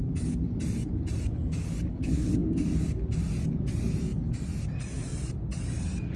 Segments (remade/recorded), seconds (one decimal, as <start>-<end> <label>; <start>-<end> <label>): 0.0-1.9 recorded; 1.9-2.5 remade; 2.5-6.2 recorded